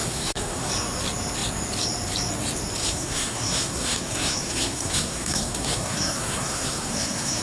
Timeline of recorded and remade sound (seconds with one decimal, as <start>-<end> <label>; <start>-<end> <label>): 0.0-0.7 remade; 0.7-2.8 recorded; 2.8-7.4 remade